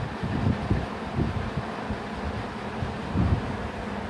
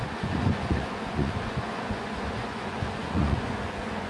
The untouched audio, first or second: first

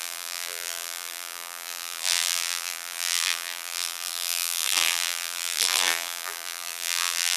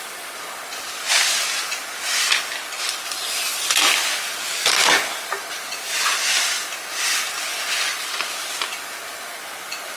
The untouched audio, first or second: second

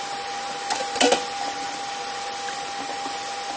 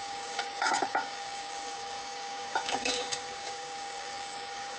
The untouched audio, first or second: first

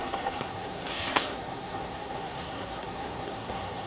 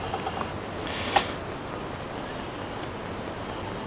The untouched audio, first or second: second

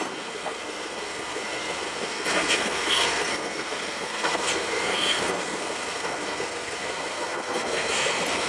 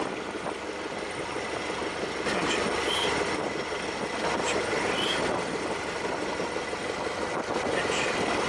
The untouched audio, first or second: second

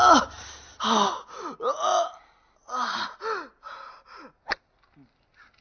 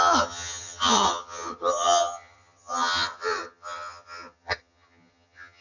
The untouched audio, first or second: first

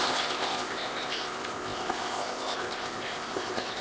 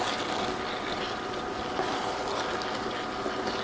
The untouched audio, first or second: second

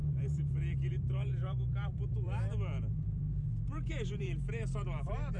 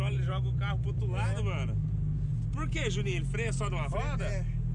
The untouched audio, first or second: second